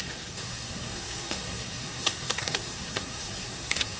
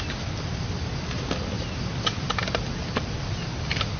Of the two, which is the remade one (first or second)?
first